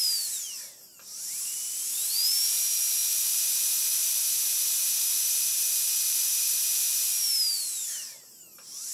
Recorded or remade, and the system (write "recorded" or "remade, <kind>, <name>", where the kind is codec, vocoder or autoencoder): remade, vocoder, BigVGAN v2